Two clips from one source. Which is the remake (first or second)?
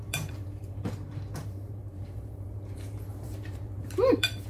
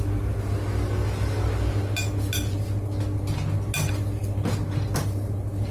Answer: first